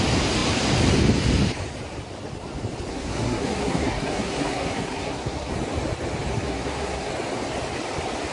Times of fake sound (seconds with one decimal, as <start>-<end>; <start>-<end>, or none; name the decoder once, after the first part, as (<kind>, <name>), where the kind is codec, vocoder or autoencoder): 2.9-5.5 (codec, SNAC); 6.3-7.1